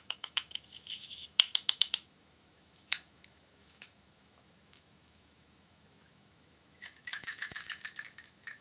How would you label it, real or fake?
fake